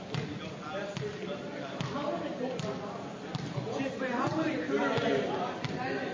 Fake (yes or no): no